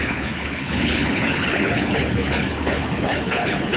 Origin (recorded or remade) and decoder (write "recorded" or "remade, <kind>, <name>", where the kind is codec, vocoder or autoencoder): remade, codec, HILCodec